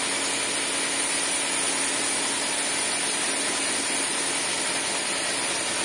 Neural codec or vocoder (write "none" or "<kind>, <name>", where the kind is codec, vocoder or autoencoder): none